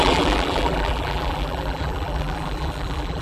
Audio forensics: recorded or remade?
remade